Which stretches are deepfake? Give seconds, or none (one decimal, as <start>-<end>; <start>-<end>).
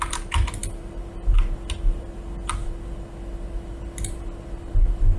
none